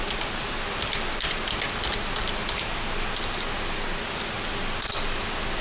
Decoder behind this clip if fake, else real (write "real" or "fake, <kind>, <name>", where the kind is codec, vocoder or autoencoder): real